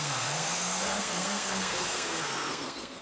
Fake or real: fake